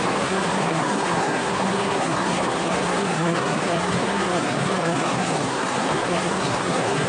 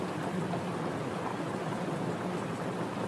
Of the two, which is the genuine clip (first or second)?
second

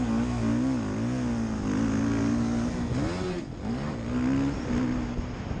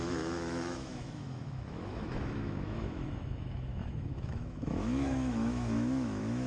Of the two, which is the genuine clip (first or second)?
first